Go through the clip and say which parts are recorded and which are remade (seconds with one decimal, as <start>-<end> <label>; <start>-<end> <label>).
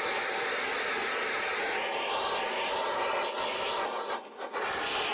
0.0-5.1 recorded